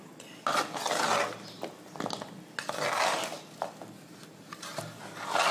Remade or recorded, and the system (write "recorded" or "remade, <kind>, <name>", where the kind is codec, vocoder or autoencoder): recorded